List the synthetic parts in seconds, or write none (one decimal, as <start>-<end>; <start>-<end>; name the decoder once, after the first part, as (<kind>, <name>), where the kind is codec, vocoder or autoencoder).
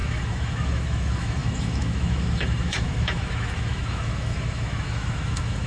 0.0-5.7 (autoencoder, DAC-VAE)